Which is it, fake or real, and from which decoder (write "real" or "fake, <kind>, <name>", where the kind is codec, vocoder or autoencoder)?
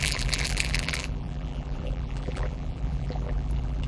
fake, vocoder, BigVGAN v2